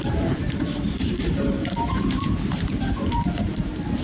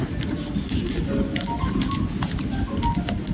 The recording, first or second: second